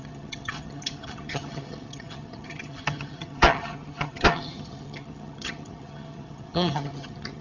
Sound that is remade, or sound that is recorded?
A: remade